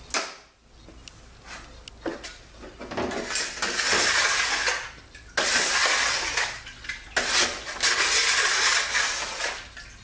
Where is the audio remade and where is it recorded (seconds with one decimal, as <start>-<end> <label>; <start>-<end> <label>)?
0.0-10.0 recorded